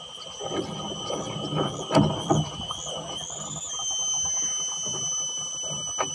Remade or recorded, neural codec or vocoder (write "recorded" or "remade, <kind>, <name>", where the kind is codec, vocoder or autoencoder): recorded